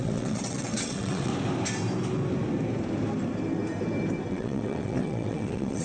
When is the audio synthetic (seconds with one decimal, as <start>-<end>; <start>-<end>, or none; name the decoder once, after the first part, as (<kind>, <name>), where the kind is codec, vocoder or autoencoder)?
0.0-1.3 (vocoder, WaveNeXt); 4.3-5.8